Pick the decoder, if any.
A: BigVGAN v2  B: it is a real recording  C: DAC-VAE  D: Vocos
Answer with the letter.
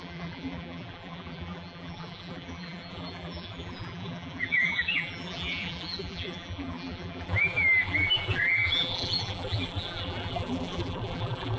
A